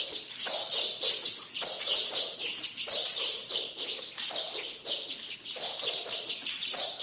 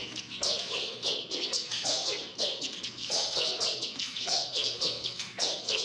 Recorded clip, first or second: first